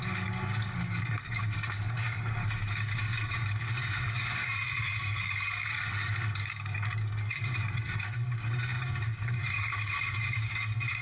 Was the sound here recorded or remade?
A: remade